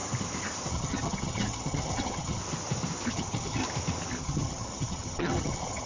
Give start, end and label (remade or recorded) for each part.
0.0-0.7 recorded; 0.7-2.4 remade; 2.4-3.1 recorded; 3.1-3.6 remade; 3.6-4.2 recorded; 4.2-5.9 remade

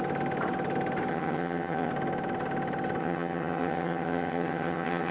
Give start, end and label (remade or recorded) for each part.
0.0-1.1 recorded; 1.1-1.9 remade; 1.9-3.0 recorded; 3.0-5.1 remade

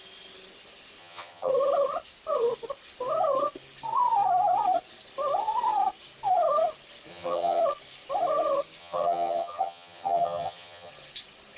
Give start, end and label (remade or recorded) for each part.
0.0-1.0 recorded; 1.0-1.5 remade; 1.5-7.1 recorded; 7.1-7.6 remade; 7.6-8.8 recorded; 8.8-10.9 remade; 10.9-11.6 recorded